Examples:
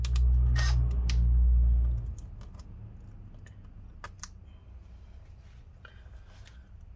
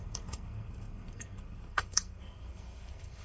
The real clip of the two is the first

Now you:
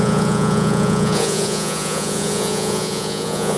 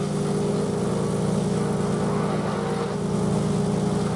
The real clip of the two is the second